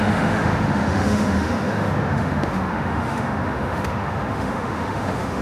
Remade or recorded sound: remade